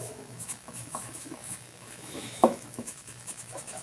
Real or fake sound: fake